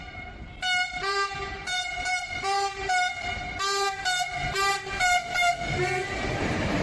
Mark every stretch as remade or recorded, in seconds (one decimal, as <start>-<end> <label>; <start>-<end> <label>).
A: 0.0-0.9 recorded; 0.9-2.2 remade; 2.2-6.3 recorded; 6.3-6.8 remade